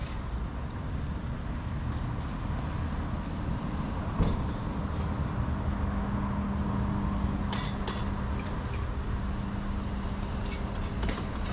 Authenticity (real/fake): real